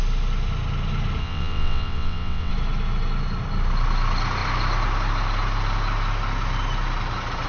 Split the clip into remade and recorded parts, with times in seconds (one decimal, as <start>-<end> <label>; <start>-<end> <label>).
0.0-1.2 recorded; 1.2-2.5 remade; 2.5-7.5 recorded